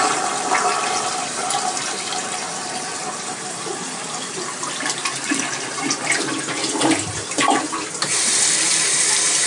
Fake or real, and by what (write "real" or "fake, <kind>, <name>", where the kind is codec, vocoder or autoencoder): fake, vocoder, BigVGAN v2